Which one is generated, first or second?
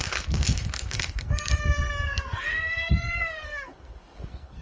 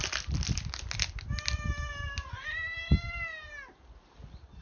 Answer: first